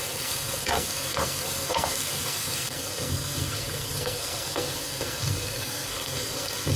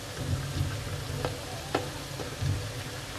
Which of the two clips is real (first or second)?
second